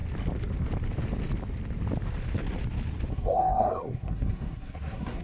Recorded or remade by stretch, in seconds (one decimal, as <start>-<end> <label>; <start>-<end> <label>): 0.0-3.1 recorded; 3.1-5.2 remade